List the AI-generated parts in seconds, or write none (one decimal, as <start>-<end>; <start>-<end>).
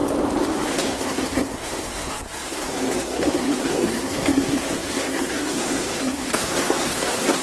0.7-7.4